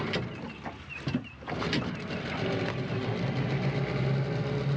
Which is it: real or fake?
real